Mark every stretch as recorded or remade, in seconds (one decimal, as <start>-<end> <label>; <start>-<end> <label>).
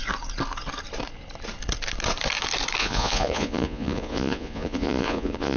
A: 0.0-2.8 recorded; 2.8-5.6 remade